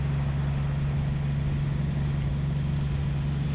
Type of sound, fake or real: real